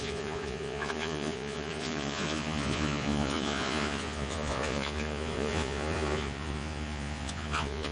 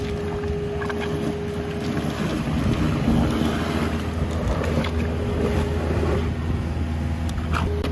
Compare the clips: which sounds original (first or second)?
second